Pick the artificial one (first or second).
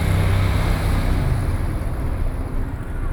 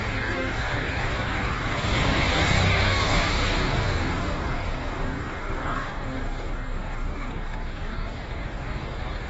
second